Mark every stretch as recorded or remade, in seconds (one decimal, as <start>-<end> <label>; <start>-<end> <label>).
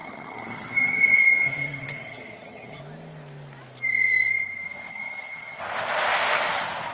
0.0-2.8 remade; 2.8-4.9 recorded; 4.9-5.6 remade; 5.6-6.9 recorded